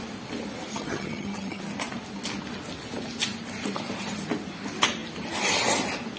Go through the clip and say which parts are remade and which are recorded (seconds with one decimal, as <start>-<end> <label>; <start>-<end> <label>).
0.0-0.7 recorded; 0.7-1.6 remade; 1.6-6.2 recorded